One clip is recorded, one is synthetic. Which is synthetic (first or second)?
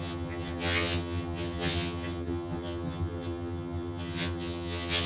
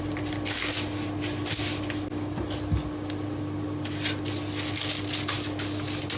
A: first